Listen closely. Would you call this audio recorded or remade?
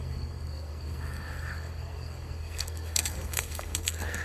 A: remade